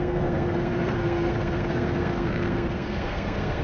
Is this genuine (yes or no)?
no